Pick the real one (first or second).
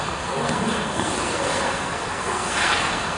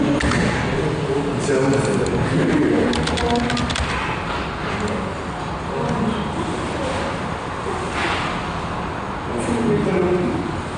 second